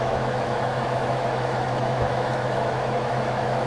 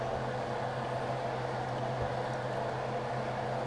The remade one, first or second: first